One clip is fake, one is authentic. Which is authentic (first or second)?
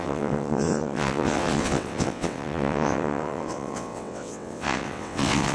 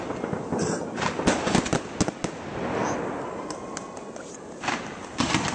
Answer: second